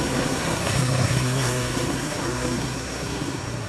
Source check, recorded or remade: remade